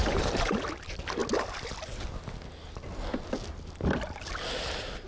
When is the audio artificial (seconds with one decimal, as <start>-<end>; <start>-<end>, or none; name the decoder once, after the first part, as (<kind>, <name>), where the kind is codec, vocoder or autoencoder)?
0.0-0.5 (vocoder, BigVGAN v2)